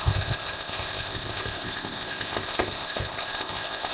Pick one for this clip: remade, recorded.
remade